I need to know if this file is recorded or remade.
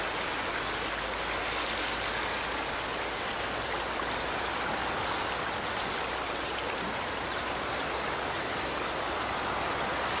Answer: recorded